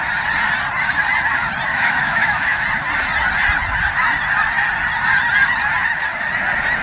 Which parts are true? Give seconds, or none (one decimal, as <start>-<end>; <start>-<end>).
0.0-1.7; 2.6-6.8